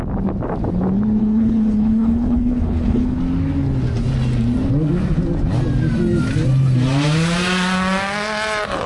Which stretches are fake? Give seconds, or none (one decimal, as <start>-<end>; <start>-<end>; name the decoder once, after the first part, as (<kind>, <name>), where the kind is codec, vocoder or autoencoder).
1.2-3.2 (codec, HILCodec)